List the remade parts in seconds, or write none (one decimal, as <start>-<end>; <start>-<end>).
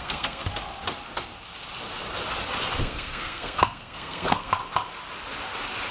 0.0-0.4; 2.8-4.6